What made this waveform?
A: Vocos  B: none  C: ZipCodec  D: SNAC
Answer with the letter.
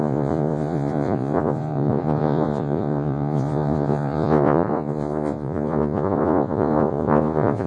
A